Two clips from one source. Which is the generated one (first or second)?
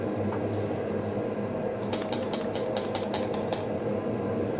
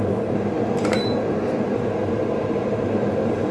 second